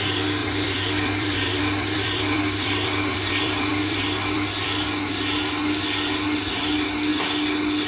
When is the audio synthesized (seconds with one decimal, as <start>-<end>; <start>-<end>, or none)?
0.4-5.1